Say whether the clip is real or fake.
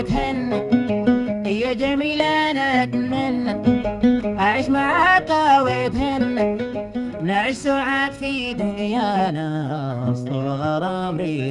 fake